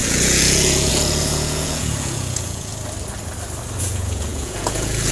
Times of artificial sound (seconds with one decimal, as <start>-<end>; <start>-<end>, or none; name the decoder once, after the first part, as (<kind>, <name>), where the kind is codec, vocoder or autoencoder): 0.0-2.7 (vocoder, Vocos); 3.8-5.1